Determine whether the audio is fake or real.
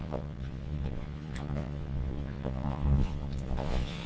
fake